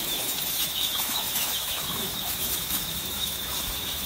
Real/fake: fake